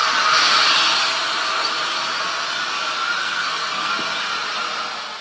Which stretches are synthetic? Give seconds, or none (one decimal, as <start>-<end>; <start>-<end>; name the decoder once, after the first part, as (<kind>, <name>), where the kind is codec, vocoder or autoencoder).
3.2-3.9 (codec, SNAC)